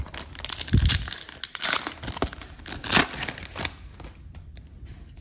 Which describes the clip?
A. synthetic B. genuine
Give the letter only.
B